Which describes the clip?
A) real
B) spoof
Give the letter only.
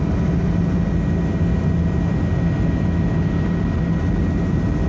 A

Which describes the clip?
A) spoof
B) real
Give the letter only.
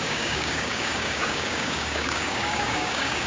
A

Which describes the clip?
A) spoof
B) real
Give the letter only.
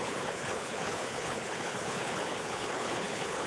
A